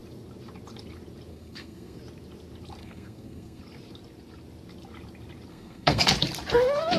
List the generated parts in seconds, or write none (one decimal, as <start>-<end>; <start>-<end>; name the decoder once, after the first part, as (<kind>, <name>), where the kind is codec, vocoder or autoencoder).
1.3-2.0 (codec, SNAC); 2.8-3.6; 5.5-6.0